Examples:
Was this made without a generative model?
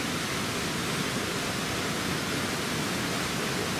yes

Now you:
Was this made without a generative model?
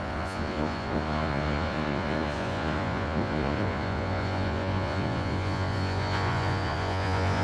no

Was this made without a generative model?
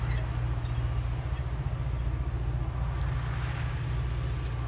yes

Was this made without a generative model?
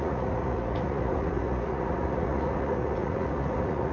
no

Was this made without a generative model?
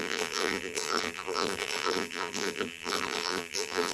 no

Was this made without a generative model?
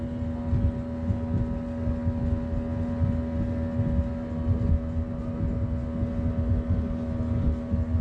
yes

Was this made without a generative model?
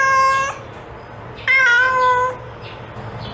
yes